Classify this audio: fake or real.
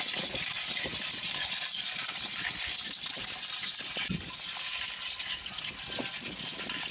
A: real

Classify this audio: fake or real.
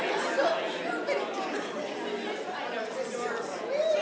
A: real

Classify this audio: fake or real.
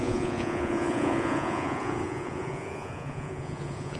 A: fake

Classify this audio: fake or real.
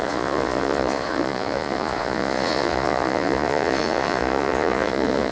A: fake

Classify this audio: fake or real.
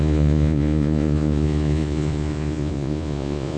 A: fake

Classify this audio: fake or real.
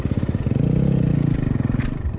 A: real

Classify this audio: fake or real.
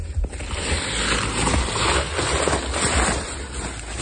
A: real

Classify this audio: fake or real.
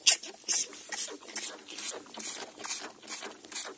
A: real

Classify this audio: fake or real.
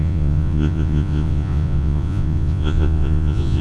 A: fake